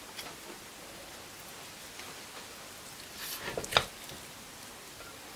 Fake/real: real